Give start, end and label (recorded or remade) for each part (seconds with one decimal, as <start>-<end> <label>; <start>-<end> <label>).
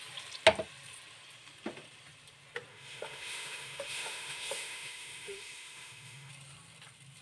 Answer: 0.0-2.7 recorded; 2.7-6.3 remade; 6.3-7.2 recorded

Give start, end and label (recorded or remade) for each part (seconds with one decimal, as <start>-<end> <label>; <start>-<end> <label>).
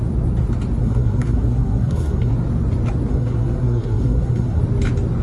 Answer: 0.0-0.8 recorded; 0.8-2.3 remade; 2.3-3.1 recorded; 3.1-4.6 remade; 4.6-5.2 recorded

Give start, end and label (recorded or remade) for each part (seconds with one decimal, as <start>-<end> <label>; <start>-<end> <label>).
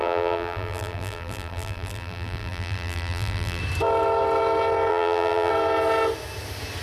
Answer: 0.0-3.6 remade; 3.6-4.9 recorded; 4.9-5.5 remade; 5.5-6.8 recorded